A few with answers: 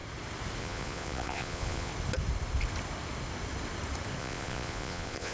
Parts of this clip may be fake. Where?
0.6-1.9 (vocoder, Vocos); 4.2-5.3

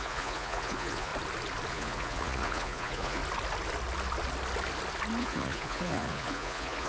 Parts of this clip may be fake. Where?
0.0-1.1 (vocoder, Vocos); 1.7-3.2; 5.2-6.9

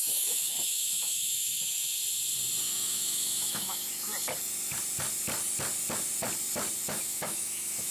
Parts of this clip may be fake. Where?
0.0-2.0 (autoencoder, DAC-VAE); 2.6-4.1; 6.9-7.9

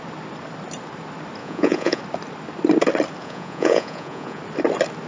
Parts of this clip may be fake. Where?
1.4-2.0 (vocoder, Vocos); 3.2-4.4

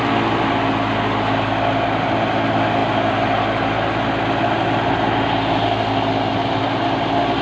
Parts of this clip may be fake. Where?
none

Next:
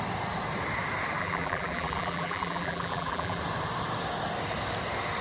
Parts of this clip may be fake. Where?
1.2-3.4 (vocoder, BigVGAN v2)

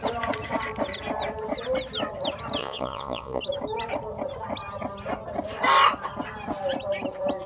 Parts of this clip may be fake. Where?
2.6-3.4 (vocoder, Vocos)